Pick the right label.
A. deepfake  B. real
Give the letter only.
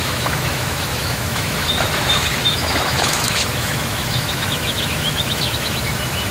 A